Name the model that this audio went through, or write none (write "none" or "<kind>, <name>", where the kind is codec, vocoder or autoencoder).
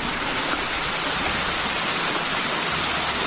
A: none